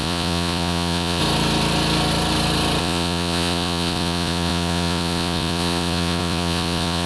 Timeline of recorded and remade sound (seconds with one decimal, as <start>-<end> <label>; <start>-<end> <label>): 0.0-1.2 remade; 1.2-2.8 recorded; 2.8-7.1 remade